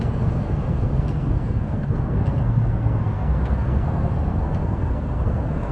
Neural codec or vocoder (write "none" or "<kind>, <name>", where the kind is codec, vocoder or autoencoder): codec, SNAC